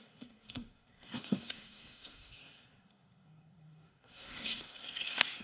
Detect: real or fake fake